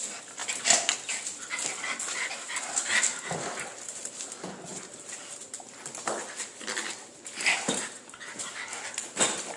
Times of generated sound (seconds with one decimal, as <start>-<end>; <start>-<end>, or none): none